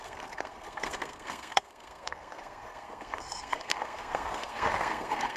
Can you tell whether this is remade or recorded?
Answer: remade